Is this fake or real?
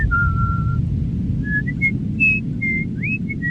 real